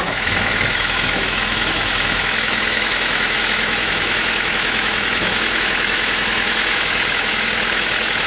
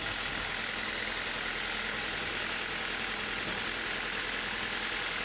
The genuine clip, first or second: second